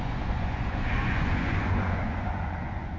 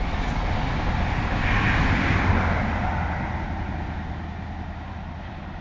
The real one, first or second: second